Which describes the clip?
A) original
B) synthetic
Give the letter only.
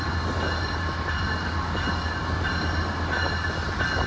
A